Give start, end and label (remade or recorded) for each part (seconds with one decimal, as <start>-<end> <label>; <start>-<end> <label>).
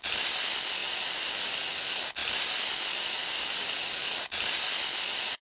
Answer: 0.0-5.5 recorded